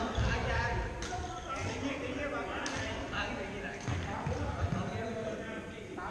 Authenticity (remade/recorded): recorded